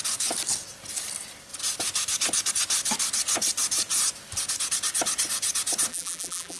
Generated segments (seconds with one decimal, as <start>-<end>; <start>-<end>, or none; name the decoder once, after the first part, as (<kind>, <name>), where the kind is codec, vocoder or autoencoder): 5.9-6.6 (vocoder, BigVGAN v2)